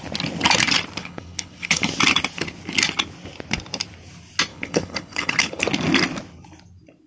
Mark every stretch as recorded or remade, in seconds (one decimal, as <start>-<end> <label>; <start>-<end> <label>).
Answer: 0.0-1.0 recorded; 1.0-1.8 remade; 1.8-4.5 recorded; 4.5-5.6 remade; 5.6-7.1 recorded